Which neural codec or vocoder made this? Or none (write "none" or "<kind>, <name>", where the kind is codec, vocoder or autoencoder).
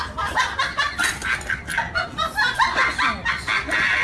none